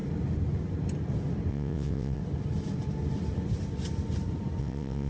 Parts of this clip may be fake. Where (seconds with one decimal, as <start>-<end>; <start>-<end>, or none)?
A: 1.5-2.2; 4.6-5.1